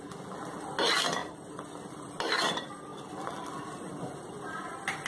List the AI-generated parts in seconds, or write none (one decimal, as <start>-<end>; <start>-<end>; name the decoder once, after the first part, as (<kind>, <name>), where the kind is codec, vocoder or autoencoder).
none